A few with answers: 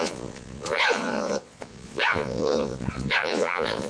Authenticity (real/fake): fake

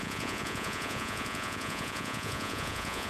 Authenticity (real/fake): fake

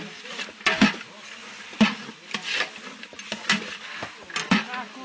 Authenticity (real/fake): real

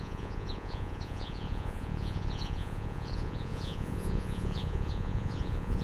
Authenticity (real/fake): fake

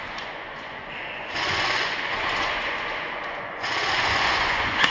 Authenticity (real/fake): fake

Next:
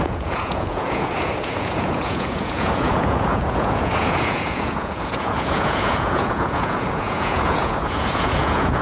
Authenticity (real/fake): fake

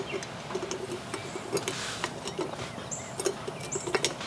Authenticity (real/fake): real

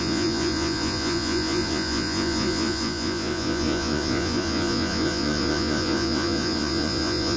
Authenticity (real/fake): fake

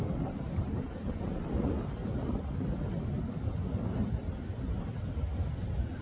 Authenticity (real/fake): real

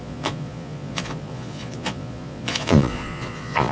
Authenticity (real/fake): fake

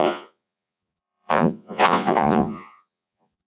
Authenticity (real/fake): fake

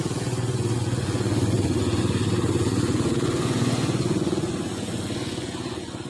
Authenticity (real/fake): fake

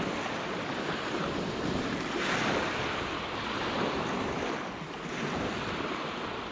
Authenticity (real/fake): real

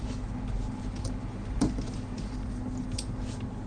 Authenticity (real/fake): real